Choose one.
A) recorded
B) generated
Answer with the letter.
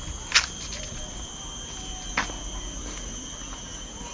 A